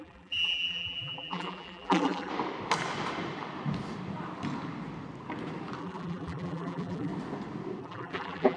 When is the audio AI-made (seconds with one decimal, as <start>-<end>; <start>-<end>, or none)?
0.0-2.3; 5.8-7.1; 7.8-8.6